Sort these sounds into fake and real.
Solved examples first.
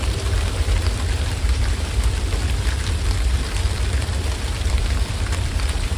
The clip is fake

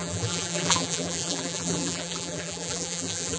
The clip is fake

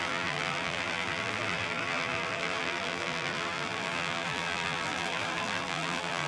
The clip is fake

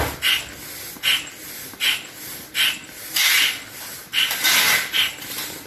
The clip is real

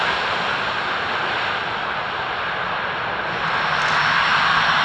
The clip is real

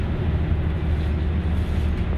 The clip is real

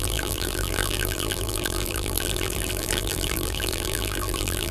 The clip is fake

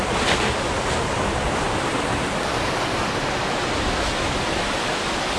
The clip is real